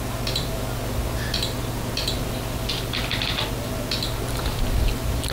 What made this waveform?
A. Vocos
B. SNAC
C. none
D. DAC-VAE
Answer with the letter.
C